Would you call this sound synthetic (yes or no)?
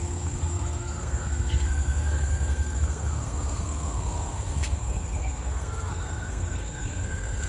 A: yes